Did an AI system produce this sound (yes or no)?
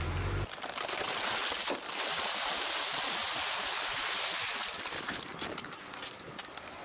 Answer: no